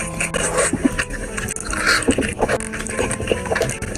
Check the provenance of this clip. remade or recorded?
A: recorded